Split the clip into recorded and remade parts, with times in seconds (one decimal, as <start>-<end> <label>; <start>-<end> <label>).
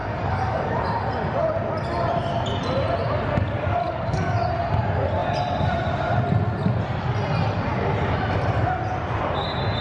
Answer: 0.0-0.8 remade; 0.8-3.8 recorded; 3.8-4.5 remade; 4.5-9.8 recorded